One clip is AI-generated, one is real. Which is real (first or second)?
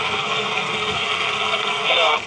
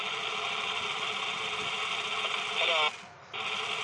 second